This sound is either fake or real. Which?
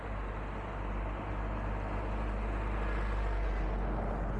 real